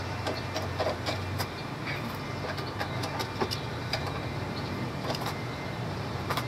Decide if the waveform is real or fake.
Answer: fake